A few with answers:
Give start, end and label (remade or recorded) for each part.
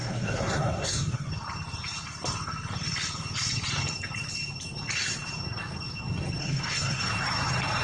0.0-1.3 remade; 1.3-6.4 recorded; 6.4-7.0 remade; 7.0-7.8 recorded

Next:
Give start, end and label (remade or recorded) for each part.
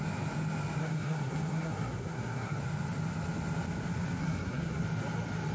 0.0-0.8 recorded; 0.8-2.6 remade; 2.6-4.2 recorded; 4.2-4.8 remade; 4.8-5.5 recorded